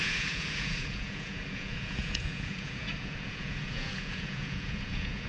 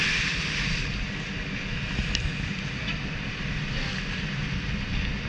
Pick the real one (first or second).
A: second